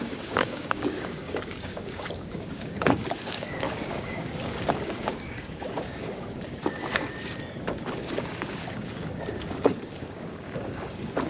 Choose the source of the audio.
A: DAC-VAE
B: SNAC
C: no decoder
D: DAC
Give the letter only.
D